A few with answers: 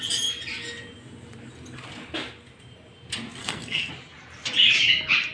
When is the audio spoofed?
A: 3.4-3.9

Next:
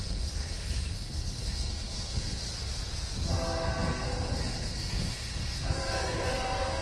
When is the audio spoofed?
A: 0.0-2.4; 3.3-6.8

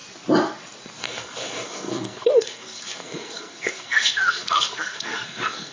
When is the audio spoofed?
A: 1.0-5.7

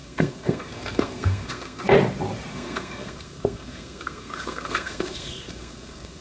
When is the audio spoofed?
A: 0.0-1.8; 2.5-6.2

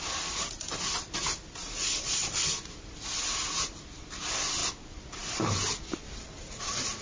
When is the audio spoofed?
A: none

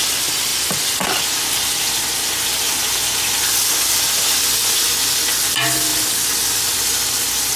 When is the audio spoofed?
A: none